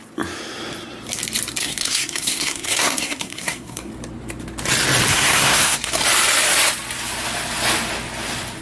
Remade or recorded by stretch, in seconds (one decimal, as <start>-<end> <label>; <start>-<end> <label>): 0.0-1.6 recorded; 1.6-3.9 remade; 3.9-5.1 recorded; 5.1-5.9 remade; 5.9-8.6 recorded